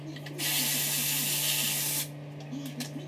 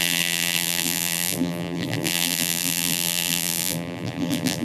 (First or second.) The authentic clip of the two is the first